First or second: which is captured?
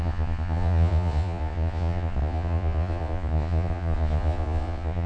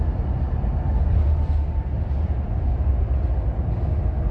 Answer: second